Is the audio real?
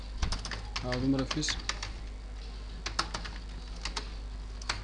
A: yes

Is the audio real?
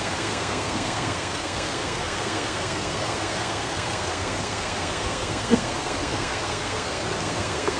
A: no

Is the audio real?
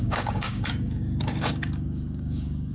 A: no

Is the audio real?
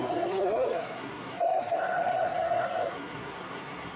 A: no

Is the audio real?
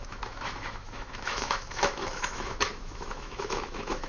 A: no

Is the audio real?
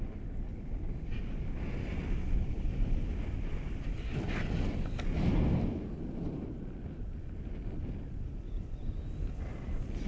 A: yes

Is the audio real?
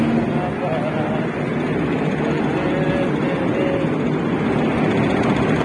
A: yes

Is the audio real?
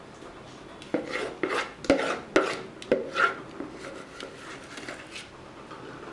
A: yes